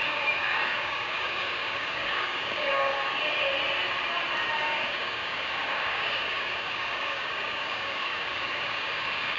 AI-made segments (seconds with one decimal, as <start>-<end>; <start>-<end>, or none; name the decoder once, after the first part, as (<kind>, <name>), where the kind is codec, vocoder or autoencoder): 0.0-2.9 (codec, DAC); 4.6-9.4